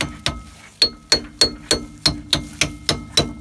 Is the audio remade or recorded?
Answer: recorded